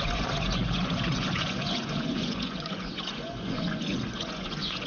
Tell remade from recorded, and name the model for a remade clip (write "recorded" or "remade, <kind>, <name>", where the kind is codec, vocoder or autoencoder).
remade, vocoder, Vocos